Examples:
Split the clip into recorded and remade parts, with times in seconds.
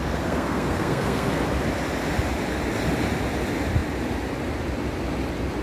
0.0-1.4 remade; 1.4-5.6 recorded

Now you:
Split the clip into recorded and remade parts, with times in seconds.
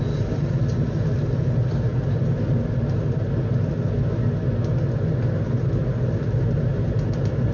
0.0-7.5 recorded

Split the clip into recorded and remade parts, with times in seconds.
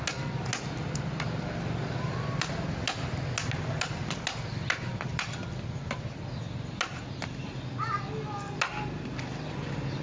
0.0-4.9 recorded; 4.9-6.1 remade; 6.1-10.0 recorded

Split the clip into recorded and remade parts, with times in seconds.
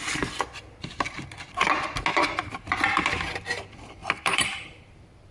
0.0-2.1 recorded; 2.1-2.9 remade; 2.9-4.0 recorded; 4.0-4.8 remade; 4.8-5.3 recorded